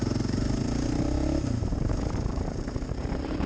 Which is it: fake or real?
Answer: fake